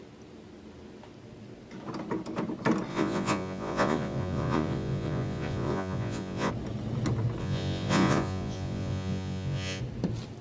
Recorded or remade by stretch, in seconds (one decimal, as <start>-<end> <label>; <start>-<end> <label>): 0.0-2.9 recorded; 2.9-6.5 remade; 6.5-7.4 recorded; 7.4-9.8 remade; 9.8-10.4 recorded